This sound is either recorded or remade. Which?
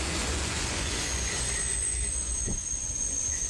remade